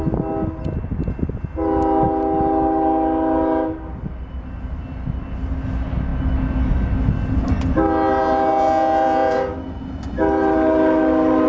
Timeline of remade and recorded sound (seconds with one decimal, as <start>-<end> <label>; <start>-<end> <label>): 0.0-11.5 recorded